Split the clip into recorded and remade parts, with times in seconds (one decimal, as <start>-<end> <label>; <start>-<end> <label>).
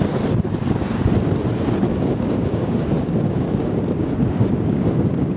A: 0.0-1.9 recorded; 1.9-5.4 remade